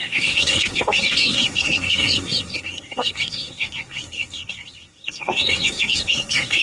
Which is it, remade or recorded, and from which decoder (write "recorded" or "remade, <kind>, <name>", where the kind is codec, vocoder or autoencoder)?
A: remade, codec, SNAC